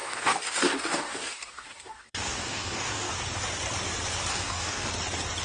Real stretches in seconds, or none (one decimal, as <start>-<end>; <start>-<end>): 3.1-4.3; 4.9-5.4